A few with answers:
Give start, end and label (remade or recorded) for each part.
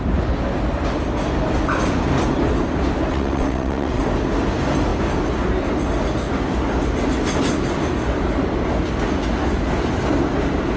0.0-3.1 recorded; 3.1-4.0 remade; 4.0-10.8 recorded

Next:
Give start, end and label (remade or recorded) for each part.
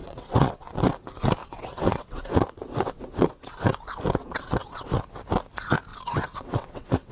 0.0-0.9 remade; 0.9-1.4 recorded; 1.4-3.5 remade; 3.5-4.2 recorded; 4.2-5.0 remade; 5.0-5.9 recorded; 5.9-7.1 remade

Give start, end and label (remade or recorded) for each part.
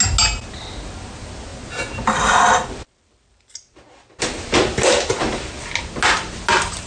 0.0-6.9 recorded